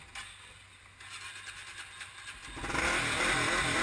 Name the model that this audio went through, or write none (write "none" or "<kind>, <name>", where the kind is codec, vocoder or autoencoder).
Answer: none